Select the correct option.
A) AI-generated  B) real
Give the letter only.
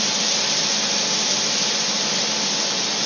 B